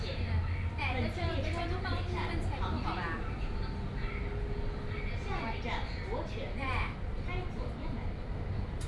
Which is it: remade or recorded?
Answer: recorded